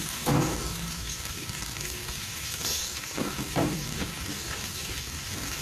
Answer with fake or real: fake